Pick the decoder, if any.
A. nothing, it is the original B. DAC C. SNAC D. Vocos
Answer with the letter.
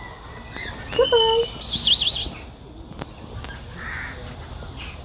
A